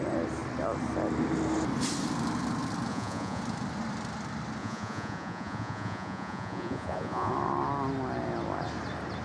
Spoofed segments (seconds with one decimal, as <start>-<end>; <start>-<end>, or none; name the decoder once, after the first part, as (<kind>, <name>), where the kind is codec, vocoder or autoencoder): 2.9-3.4 (vocoder, Vocos); 4.6-7.3